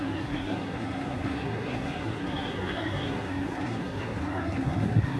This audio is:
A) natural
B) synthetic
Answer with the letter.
B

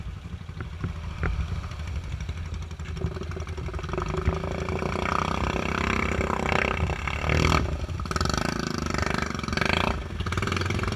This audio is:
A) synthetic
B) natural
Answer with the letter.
B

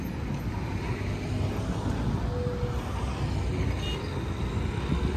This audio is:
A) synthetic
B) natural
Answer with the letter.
B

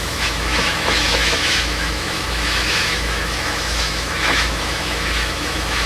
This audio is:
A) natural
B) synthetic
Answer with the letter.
B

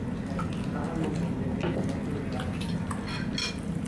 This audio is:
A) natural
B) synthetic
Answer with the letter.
A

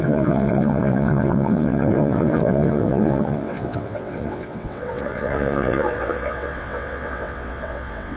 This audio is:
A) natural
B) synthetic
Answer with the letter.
B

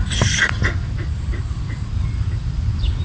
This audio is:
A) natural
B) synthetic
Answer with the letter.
A